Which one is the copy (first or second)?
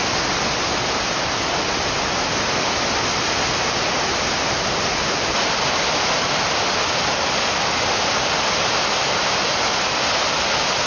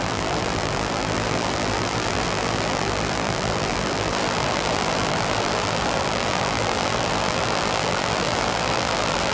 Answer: second